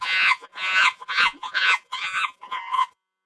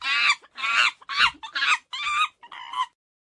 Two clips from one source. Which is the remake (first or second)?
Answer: first